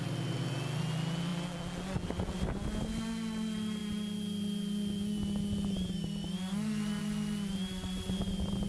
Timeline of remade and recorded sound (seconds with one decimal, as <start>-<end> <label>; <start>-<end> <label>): 0.0-8.7 recorded